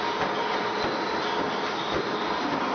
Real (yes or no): yes